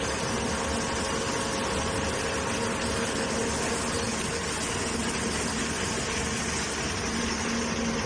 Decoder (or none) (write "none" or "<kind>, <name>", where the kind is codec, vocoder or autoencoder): none